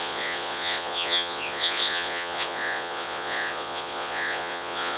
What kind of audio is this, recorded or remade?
remade